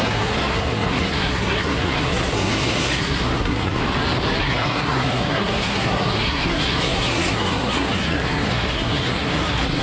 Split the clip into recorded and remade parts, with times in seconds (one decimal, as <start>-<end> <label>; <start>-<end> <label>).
0.0-3.8 remade; 3.8-4.4 recorded; 4.4-9.8 remade